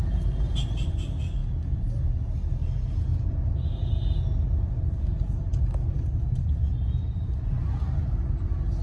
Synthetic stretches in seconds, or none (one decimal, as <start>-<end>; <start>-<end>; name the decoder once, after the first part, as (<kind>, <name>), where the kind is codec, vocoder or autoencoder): none

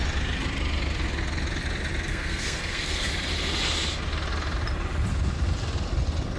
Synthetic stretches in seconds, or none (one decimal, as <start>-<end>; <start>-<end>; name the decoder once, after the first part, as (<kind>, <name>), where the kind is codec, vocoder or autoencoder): 2.1-3.1 (codec, SNAC)

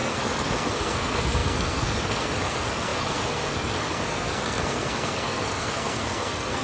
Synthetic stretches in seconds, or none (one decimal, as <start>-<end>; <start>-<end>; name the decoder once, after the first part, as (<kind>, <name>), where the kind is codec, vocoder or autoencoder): 0.0-6.6 (codec, SNAC)

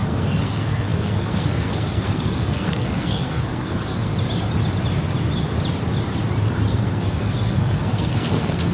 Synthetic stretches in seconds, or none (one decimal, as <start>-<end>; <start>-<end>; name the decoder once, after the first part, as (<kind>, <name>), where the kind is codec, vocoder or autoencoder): 0.0-4.1 (codec, SNAC); 6.7-8.7

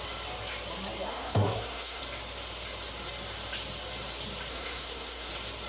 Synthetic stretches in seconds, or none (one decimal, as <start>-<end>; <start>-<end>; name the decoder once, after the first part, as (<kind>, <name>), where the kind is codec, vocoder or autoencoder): 1.1-2.0 (codec, SNAC); 4.5-5.3